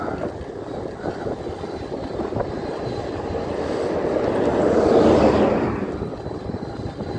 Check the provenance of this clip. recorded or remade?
recorded